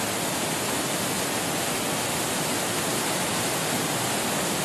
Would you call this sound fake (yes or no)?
no